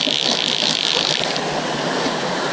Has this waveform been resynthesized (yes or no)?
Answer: no